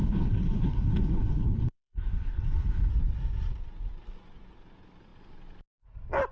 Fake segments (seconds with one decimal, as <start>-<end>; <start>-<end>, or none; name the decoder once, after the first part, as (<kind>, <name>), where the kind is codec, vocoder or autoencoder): 0.0-2.9 (codec, HILCodec)